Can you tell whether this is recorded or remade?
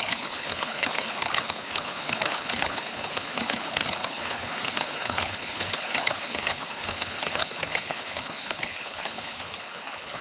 remade